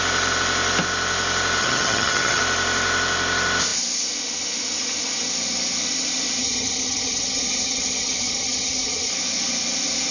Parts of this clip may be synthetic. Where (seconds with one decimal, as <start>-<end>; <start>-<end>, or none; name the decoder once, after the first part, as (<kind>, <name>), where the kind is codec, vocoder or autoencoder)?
1.6-2.4 (vocoder, HiFi-GAN); 6.4-9.1